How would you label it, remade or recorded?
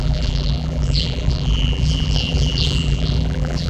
remade